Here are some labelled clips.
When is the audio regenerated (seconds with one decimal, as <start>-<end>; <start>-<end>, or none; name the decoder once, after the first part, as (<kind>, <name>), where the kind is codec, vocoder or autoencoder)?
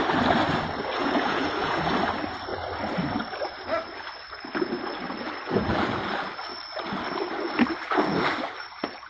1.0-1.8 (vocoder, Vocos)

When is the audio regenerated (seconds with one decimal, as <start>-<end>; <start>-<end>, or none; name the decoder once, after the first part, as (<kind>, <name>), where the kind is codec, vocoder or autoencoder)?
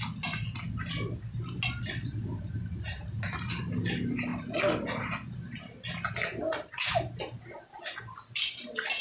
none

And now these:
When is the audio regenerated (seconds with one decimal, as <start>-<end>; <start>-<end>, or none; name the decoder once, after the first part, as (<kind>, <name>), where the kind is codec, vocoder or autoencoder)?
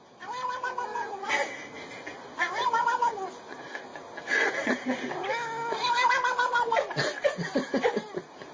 none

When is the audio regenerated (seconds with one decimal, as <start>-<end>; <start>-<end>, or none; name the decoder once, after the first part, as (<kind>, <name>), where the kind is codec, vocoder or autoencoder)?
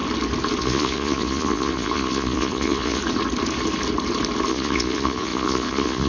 0.6-3.0 (vocoder, Vocos); 4.5-6.1